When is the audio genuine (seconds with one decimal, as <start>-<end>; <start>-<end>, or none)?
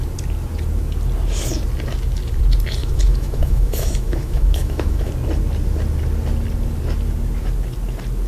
0.0-2.8; 5.1-8.3